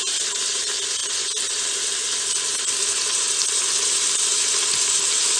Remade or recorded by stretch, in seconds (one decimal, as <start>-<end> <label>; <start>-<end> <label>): 0.0-1.0 remade; 1.0-4.2 recorded; 4.2-5.4 remade